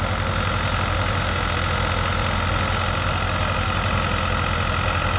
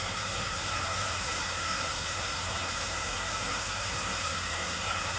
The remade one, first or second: second